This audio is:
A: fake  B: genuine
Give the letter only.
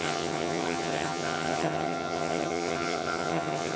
A